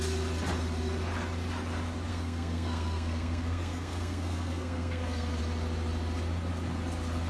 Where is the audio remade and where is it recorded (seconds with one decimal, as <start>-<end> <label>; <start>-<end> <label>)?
0.0-2.1 recorded; 2.1-5.4 remade; 5.4-7.3 recorded